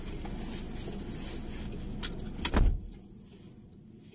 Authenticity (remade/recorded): recorded